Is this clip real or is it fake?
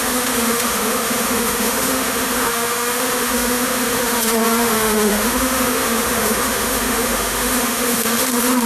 fake